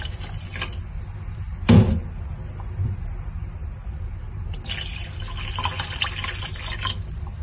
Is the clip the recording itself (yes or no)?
yes